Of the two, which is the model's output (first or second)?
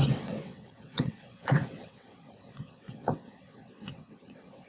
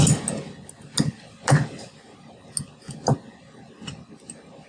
first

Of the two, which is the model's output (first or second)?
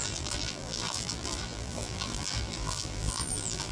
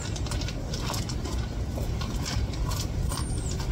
first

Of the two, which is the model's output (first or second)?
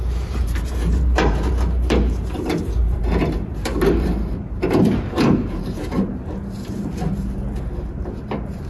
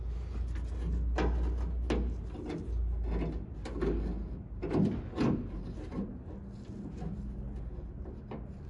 first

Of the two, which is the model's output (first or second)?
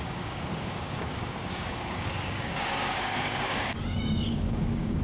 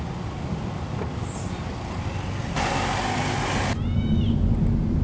first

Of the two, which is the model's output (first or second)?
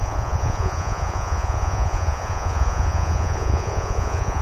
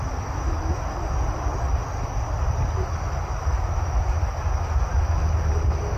first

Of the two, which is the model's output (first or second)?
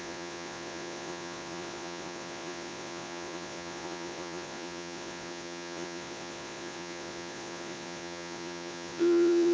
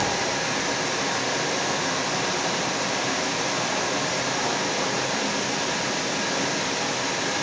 first